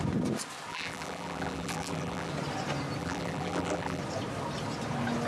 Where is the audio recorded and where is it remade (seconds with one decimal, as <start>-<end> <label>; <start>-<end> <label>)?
0.0-0.7 recorded; 0.7-2.3 remade; 2.3-3.0 recorded; 3.0-4.0 remade; 4.0-5.3 recorded